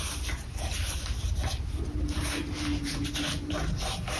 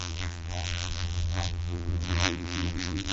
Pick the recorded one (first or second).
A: first